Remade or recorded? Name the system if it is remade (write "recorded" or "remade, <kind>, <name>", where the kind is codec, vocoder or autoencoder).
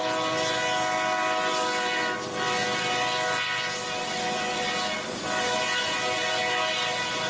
recorded